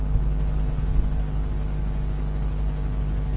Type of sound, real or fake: real